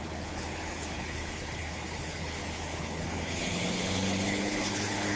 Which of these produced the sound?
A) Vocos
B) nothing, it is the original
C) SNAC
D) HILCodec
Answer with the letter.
D